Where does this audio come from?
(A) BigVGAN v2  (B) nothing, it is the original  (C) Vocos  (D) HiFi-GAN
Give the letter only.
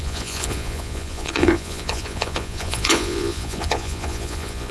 C